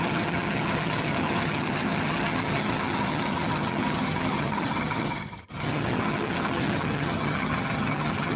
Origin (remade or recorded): remade